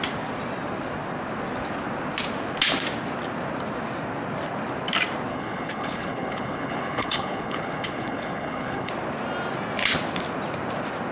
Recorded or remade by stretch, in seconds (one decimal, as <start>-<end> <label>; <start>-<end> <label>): 0.0-5.3 recorded; 5.3-8.9 remade; 8.9-11.1 recorded